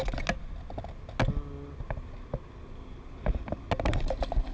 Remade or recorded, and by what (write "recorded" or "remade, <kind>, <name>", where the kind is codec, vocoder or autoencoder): recorded